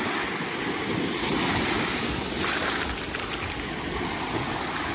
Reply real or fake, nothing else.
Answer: real